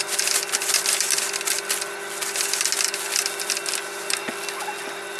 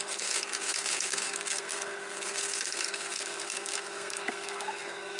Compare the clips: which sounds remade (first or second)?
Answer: second